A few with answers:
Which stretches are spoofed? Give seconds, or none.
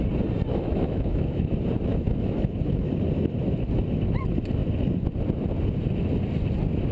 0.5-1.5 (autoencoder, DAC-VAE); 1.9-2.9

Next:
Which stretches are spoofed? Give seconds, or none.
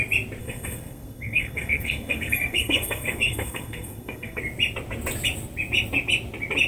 0.4-4.4 (codec, SNAC)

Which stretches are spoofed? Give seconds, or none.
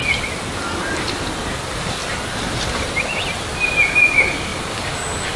none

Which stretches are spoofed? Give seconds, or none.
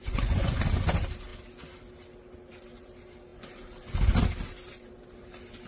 0.0-0.6 (vocoder, Vocos)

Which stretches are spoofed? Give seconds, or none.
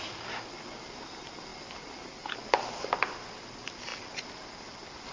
none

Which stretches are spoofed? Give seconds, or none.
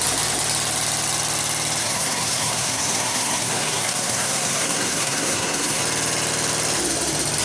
1.8-5.8 (codec, SNAC)